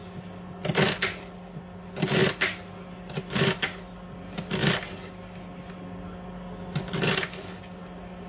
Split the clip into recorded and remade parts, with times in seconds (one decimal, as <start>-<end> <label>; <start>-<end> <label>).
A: 0.0-8.3 recorded